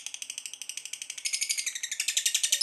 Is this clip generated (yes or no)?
no